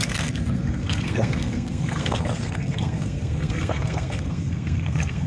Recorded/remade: remade